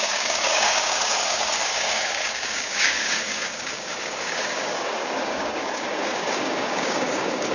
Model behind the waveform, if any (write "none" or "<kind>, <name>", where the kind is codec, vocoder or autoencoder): codec, DAC